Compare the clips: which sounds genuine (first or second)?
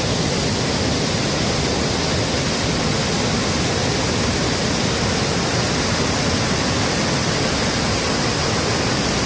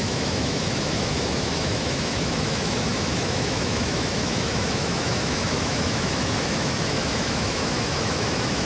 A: first